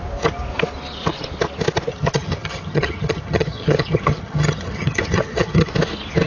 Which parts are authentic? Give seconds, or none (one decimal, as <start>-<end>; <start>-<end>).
0.0-1.9; 5.7-6.3